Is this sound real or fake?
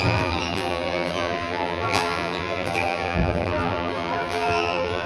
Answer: fake